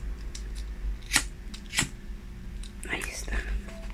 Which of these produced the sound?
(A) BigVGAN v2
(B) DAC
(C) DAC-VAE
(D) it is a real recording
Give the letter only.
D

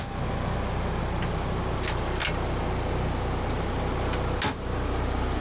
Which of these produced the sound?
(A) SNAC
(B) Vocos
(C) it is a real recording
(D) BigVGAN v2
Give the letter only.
C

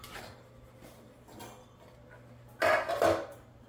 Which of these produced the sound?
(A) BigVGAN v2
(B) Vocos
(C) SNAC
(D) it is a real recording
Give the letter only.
D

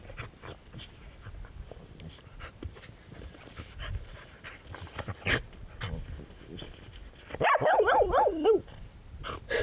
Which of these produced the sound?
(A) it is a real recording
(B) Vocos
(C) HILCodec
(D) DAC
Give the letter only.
A